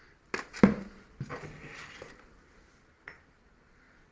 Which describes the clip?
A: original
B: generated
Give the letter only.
A